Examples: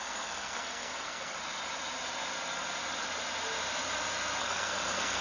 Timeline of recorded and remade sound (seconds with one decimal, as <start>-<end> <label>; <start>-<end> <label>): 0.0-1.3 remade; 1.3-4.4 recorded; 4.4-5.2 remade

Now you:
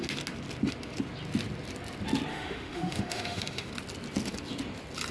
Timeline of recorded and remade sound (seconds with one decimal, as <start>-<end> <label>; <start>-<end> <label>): 0.0-2.3 recorded; 2.3-3.7 remade; 3.7-5.1 recorded

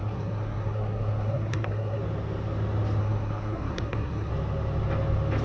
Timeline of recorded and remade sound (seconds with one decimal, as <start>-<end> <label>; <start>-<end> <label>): 0.0-2.0 remade; 2.0-3.0 recorded; 3.0-4.3 remade; 4.3-5.4 recorded

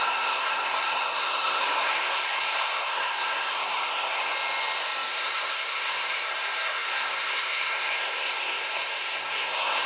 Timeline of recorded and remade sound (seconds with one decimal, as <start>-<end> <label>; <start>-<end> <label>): 0.0-4.3 remade; 4.3-5.1 recorded; 5.1-9.9 remade

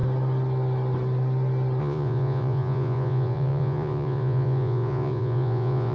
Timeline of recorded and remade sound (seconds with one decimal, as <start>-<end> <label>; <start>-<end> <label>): 0.0-1.8 recorded; 1.8-5.9 remade

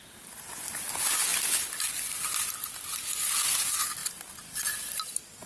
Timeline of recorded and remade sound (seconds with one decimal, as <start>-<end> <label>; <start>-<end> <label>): 0.0-1.3 recorded; 1.3-2.5 remade; 2.5-4.0 recorded; 4.0-5.5 remade

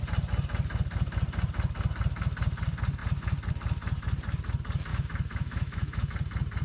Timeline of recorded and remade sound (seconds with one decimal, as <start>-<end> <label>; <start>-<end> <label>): 0.0-4.9 recorded; 4.9-6.1 remade; 6.1-6.6 recorded

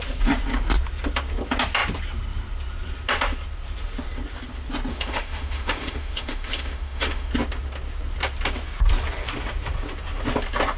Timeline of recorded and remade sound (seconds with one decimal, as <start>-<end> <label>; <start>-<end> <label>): 0.0-4.9 recorded; 4.9-7.3 remade; 7.3-10.8 recorded